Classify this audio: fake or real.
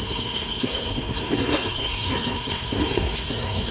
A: fake